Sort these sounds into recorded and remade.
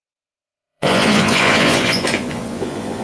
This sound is remade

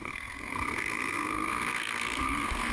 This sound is remade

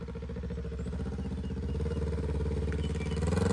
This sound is recorded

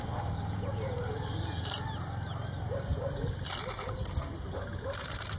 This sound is recorded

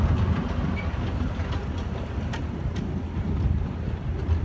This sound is remade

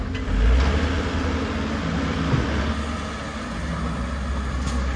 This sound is recorded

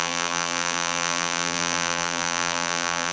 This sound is remade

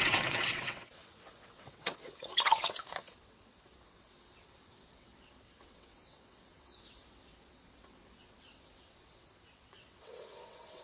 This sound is remade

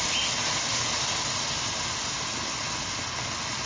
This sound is recorded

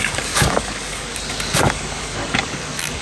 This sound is remade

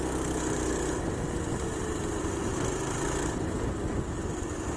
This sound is recorded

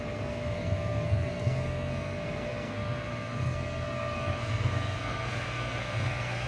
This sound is remade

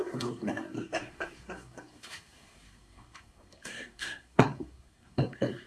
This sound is remade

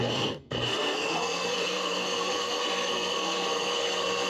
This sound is remade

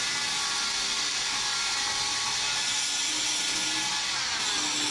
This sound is recorded